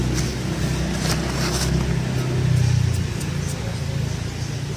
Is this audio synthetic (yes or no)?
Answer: no